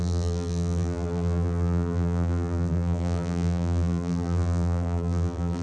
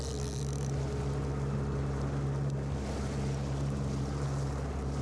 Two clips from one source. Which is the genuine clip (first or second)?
second